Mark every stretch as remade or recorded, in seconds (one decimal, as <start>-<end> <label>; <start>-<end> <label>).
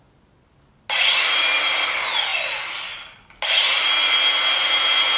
0.0-5.2 recorded